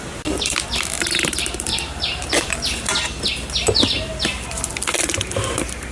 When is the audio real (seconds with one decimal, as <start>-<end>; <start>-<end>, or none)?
0.0-1.7; 2.5-5.9